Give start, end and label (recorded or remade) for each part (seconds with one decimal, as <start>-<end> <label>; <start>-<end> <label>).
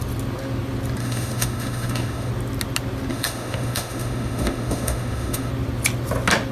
0.0-1.0 recorded; 1.0-2.3 remade; 2.3-3.1 recorded; 3.1-5.5 remade; 5.5-6.5 recorded